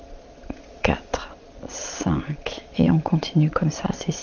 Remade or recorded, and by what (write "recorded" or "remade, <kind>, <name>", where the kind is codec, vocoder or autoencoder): remade, vocoder, Vocos